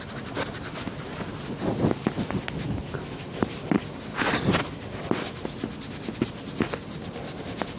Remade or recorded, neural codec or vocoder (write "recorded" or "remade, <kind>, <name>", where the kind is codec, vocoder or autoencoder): recorded